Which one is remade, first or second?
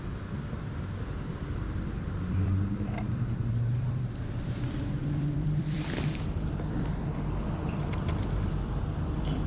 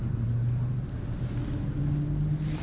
first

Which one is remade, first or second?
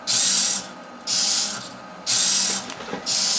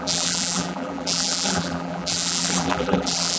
second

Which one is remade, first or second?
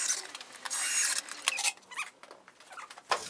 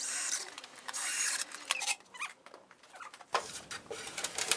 second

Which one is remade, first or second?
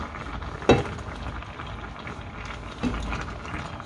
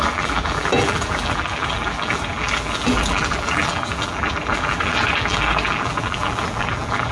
second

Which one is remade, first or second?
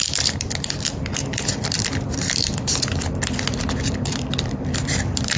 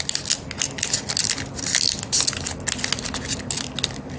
first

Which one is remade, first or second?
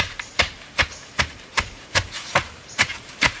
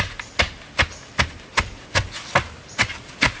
first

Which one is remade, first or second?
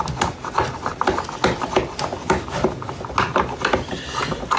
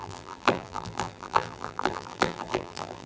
second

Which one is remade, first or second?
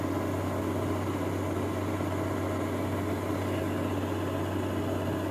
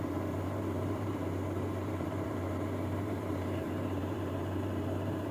second